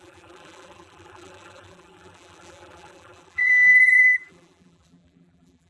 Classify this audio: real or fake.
fake